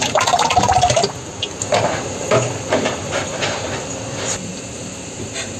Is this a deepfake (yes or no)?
yes